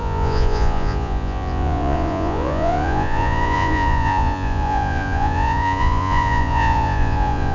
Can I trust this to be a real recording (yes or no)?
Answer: no